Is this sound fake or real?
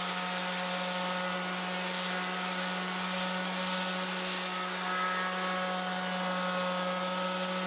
real